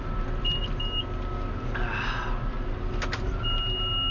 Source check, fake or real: real